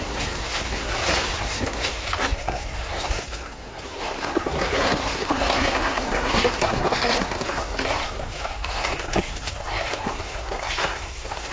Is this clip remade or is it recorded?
remade